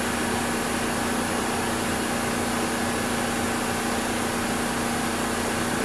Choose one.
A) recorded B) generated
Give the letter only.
A